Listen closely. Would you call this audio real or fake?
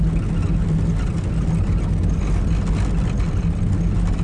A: real